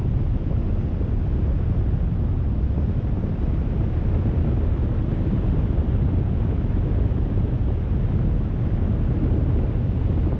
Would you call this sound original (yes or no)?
yes